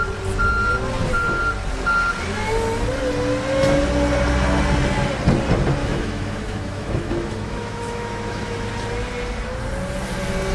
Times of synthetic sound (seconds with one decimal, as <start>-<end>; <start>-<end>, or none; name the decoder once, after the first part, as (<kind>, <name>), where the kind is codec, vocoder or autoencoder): 5.8-8.7 (autoencoder, DAC-VAE)